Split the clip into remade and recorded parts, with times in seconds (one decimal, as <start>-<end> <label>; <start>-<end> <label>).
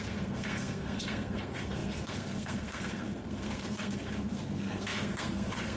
0.0-5.8 remade